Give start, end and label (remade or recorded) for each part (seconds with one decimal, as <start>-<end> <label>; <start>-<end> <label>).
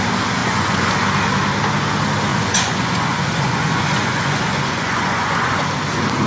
0.0-0.4 recorded; 0.4-0.9 remade; 0.9-2.3 recorded; 2.3-5.6 remade; 5.6-6.3 recorded